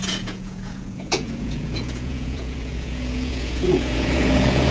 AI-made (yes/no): yes